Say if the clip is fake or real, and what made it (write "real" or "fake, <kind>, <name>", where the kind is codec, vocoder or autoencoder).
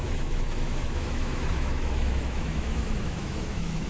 fake, autoencoder, DAC-VAE